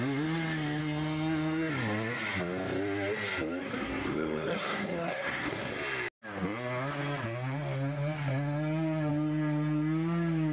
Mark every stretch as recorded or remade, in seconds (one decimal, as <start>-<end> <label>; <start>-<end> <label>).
0.0-0.8 recorded; 0.8-1.7 remade; 1.7-3.6 recorded; 3.6-5.7 remade; 5.7-10.5 recorded